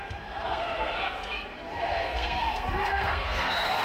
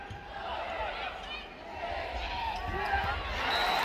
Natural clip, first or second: second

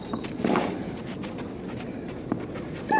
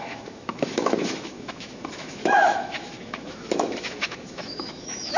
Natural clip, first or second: first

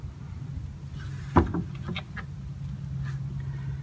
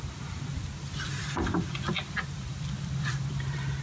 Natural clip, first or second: first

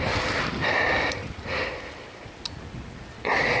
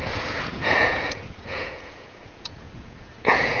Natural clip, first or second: first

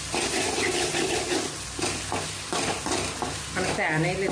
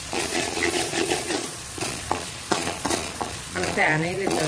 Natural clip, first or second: first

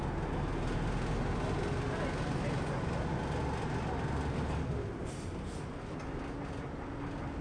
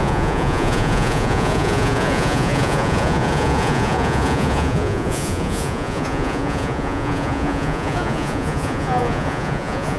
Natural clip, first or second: first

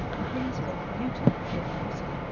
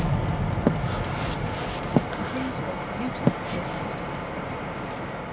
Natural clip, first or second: second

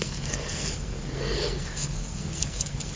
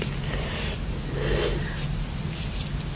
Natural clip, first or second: second